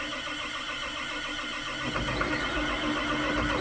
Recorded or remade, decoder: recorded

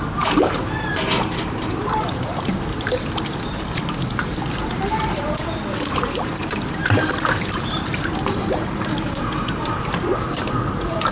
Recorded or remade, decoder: remade, vocoder, BigVGAN v2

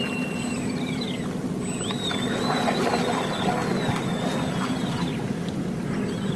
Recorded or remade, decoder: recorded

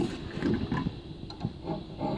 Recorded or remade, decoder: recorded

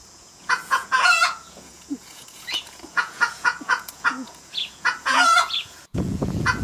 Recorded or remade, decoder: remade, vocoder, Vocos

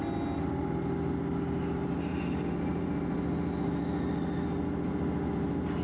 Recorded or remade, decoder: recorded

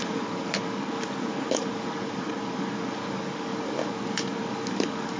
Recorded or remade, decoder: remade, codec, DAC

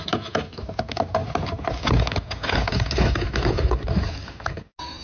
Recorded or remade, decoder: recorded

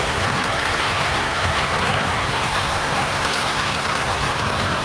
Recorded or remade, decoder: remade, codec, SNAC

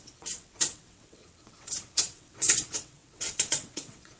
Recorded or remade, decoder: remade, vocoder, WaveNeXt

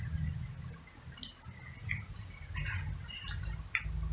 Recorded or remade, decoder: recorded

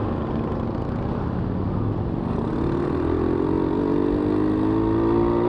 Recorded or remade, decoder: recorded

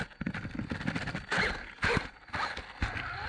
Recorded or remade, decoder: recorded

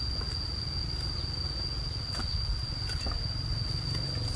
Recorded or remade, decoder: recorded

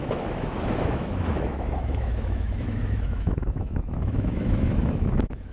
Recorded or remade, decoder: remade, autoencoder, DAC-VAE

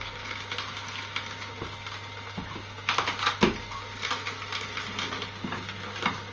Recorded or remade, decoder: recorded